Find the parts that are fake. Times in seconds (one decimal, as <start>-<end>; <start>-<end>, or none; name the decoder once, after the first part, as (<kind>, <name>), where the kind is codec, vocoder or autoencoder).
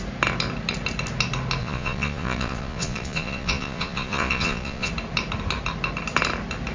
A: 1.6-4.9 (vocoder, Vocos)